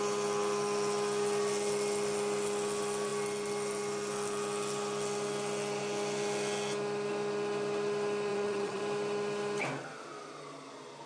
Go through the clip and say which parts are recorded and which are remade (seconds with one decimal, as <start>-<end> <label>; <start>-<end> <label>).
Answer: 0.0-8.3 recorded; 8.3-8.8 remade; 8.8-11.1 recorded